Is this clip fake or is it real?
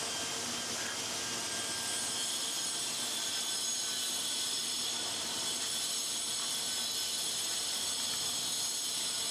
real